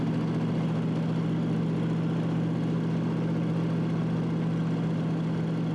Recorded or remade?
recorded